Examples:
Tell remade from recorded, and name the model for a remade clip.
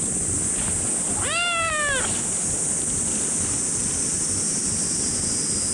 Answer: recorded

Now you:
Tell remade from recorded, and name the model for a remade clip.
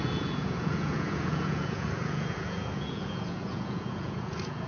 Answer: remade, vocoder, Vocos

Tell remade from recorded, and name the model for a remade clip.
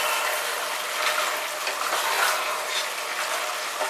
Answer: recorded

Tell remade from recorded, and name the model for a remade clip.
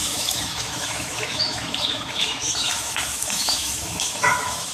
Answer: remade, autoencoder, DAC-VAE